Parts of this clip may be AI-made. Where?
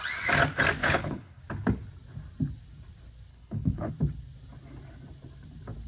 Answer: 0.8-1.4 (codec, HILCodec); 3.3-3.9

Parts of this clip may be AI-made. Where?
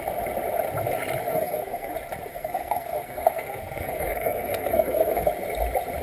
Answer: 1.3-1.9 (codec, SNAC); 2.3-5.3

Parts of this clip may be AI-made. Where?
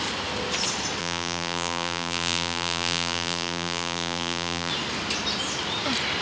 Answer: 1.0-4.7 (vocoder, BigVGAN v2)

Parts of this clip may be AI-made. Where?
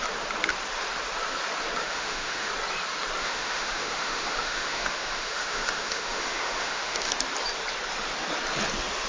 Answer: 1.8-2.5 (autoencoder, DAC-VAE); 3.2-7.1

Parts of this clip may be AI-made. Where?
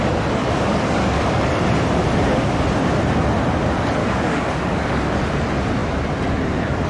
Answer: 0.4-1.5 (codec, DAC); 4.0-5.2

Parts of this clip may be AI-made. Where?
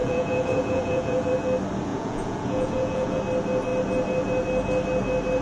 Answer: 0.0-1.3 (vocoder, Vocos); 1.9-3.2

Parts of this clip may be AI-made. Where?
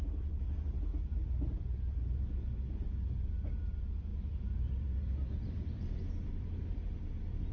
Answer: 0.9-2.7 (vocoder, BigVGAN v2); 4.1-6.8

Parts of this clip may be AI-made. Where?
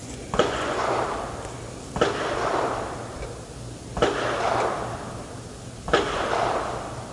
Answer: 0.0-0.9 (vocoder, Vocos)